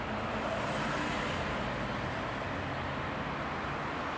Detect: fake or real real